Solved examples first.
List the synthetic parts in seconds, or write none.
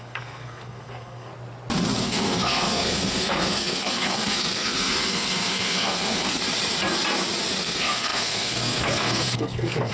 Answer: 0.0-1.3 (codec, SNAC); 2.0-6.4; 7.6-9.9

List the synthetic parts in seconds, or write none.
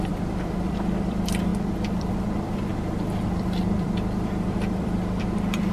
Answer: 0.0-1.5 (vocoder, BigVGAN v2); 2.0-5.7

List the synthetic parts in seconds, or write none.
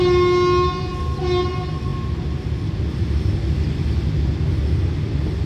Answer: none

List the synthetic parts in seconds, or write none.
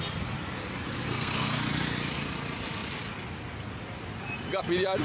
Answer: 1.1-1.6 (codec, SNAC)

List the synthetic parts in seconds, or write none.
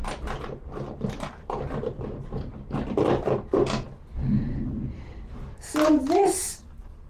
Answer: 1.4-2.5 (vocoder, BigVGAN v2)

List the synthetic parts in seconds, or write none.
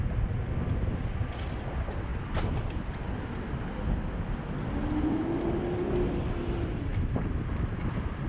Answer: none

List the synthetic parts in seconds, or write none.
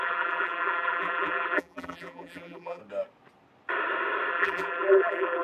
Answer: 0.0-2.8 (vocoder, BigVGAN v2); 4.3-5.4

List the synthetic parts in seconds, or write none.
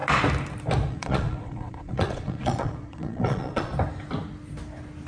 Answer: 0.9-3.7 (vocoder, Vocos)